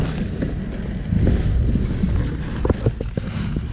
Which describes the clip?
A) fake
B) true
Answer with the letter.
B